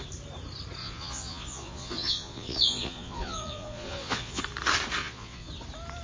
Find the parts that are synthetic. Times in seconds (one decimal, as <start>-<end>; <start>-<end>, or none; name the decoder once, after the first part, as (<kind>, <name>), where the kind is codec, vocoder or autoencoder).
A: 0.8-4.4 (vocoder, Vocos); 5.0-5.5